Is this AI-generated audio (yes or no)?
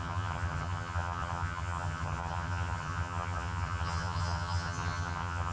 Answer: yes